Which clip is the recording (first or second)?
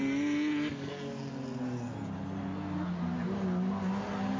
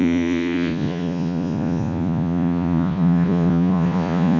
first